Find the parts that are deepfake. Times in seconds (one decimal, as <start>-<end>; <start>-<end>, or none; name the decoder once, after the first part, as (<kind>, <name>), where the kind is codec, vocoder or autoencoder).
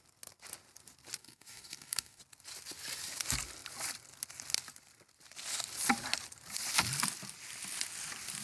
1.2-2.2 (codec, DAC)